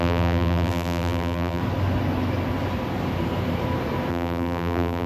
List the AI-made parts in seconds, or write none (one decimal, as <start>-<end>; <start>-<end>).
0.0-1.6; 4.1-5.1